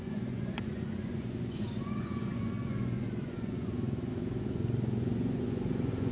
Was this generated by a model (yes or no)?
yes